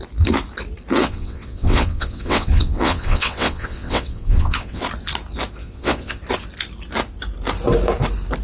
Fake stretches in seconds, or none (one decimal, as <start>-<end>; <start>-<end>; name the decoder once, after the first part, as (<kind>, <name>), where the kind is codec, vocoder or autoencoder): 1.0-4.8 (vocoder, WaveNeXt); 5.6-6.2

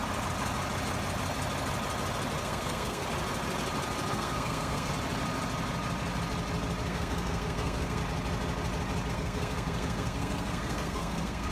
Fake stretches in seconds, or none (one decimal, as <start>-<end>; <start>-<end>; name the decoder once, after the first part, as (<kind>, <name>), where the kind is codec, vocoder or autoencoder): 2.4-3.0 (codec, SNAC); 4.1-4.9; 6.9-8.0; 9.1-11.5

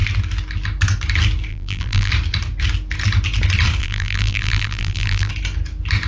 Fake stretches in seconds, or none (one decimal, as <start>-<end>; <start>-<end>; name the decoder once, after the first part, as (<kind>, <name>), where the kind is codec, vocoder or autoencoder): 1.5-2.1 (vocoder, BigVGAN v2); 3.8-5.3

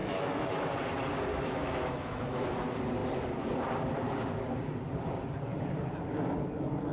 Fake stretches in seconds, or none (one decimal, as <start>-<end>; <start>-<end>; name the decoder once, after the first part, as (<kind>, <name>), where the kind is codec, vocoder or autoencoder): 0.0-0.7 (autoencoder, DAC-VAE); 1.3-2.5